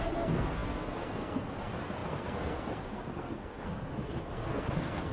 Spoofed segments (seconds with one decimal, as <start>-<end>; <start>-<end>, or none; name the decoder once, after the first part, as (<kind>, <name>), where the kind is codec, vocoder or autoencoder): 0.0-5.1 (codec, SNAC)

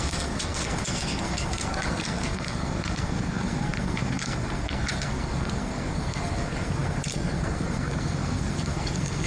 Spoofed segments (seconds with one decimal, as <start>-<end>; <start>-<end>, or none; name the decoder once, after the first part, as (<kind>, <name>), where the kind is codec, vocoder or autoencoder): 0.0-9.3 (codec, SNAC)

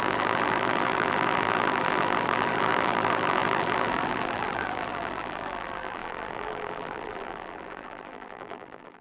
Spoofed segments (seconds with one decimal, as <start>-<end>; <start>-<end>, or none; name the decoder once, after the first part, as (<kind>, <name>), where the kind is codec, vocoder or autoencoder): 0.0-9.0 (vocoder, BigVGAN v2)

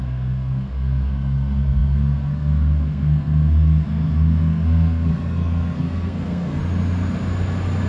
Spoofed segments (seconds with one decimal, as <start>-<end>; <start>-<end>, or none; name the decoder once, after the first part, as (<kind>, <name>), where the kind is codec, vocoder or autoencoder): 0.0-6.6 (codec, SNAC)

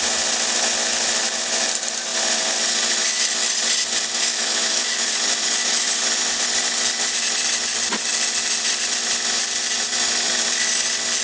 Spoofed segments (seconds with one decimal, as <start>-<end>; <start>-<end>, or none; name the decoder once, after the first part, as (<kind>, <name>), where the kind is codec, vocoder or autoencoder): 4.3-5.1 (autoencoder, DAC-VAE)

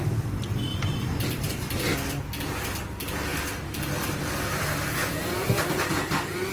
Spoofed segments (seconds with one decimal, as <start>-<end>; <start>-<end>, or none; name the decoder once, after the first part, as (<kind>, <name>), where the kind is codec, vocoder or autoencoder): 0.7-1.5 (vocoder, BigVGAN v2); 5.0-5.6